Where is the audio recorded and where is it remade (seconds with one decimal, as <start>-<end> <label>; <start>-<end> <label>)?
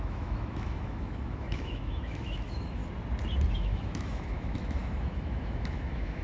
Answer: 0.0-2.8 remade; 2.8-3.5 recorded; 3.5-6.2 remade